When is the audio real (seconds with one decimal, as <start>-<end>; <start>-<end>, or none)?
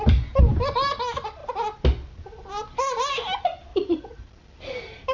0.0-3.7; 4.3-5.1